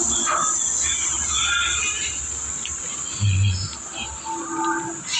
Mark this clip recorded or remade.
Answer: recorded